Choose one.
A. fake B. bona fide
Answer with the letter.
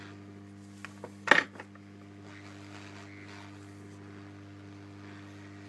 B